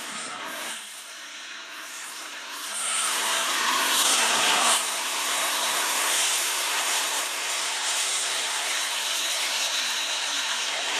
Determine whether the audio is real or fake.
fake